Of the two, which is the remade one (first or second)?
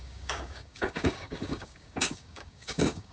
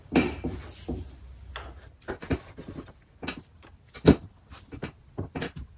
first